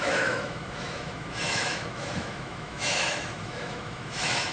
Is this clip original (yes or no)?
no